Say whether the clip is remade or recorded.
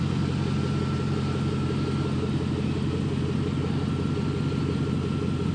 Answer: recorded